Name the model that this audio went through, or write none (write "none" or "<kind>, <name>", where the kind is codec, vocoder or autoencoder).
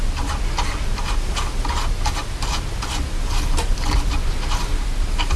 none